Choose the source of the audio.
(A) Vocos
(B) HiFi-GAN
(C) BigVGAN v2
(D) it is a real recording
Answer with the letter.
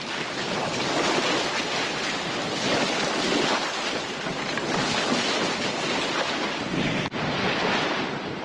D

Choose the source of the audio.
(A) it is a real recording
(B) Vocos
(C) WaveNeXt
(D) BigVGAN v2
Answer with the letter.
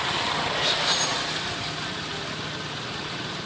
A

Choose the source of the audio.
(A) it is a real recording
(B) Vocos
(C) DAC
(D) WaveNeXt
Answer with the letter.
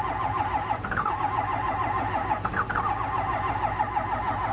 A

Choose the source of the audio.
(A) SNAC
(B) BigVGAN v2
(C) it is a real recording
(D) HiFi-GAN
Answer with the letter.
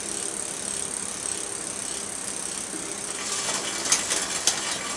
C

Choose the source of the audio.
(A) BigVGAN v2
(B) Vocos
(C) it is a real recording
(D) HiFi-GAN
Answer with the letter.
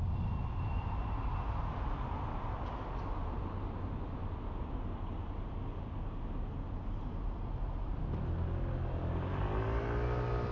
C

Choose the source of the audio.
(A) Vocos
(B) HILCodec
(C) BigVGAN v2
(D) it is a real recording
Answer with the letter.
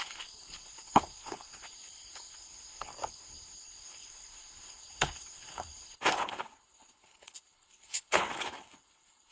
B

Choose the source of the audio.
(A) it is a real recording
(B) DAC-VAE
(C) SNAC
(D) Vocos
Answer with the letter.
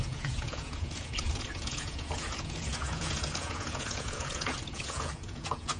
D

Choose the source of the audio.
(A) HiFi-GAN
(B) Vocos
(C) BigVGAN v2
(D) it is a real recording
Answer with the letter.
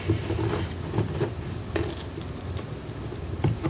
D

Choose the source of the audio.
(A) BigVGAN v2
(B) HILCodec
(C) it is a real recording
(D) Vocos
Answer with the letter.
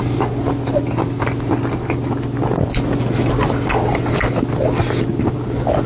C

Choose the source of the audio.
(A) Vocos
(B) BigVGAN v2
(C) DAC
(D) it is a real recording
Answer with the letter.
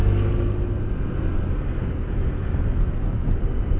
D